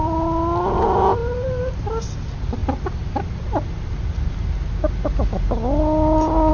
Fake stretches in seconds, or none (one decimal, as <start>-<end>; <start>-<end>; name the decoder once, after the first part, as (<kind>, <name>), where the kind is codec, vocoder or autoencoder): none